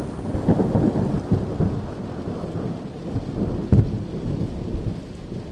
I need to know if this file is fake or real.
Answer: real